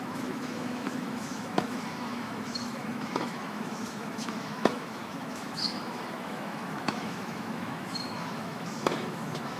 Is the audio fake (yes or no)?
yes